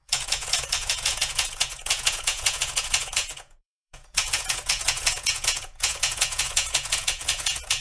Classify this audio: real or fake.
fake